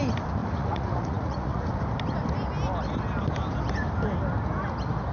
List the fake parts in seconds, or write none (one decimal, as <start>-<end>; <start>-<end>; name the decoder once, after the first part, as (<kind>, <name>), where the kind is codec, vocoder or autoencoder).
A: 0.4-1.8 (vocoder, Vocos)

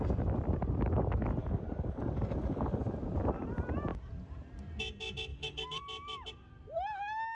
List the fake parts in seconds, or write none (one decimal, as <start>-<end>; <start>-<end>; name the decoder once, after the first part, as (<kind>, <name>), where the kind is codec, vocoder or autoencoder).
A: 1.4-2.8 (codec, DAC); 5.3-5.8

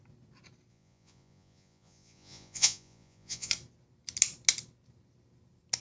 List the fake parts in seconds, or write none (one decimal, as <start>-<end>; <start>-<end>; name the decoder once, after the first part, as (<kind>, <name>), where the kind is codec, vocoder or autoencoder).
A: 0.7-3.5 (vocoder, Vocos)

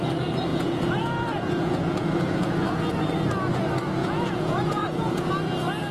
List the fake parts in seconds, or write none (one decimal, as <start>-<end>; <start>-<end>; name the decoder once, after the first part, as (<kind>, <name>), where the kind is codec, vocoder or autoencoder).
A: 0.5-2.9 (vocoder, Vocos); 4.0-5.3

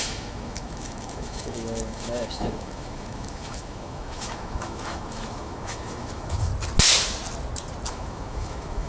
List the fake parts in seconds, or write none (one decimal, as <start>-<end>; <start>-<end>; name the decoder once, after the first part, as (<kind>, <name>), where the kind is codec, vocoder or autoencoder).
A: 0.0-6.5 (autoencoder, DAC-VAE); 7.9-8.9

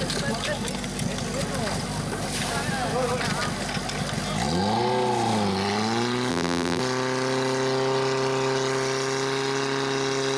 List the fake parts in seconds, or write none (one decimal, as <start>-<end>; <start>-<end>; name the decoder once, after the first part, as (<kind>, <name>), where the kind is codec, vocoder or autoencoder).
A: 6.3-6.8 (vocoder, BigVGAN v2)